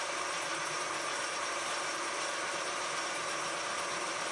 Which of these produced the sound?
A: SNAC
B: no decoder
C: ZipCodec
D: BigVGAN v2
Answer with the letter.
D